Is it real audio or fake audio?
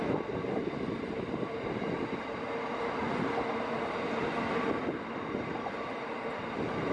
real